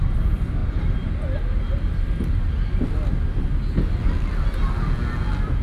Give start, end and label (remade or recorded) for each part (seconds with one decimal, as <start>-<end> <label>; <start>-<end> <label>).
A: 0.0-5.6 recorded